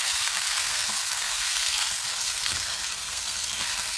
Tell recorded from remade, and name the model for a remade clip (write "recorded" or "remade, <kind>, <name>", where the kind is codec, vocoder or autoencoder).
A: remade, codec, SNAC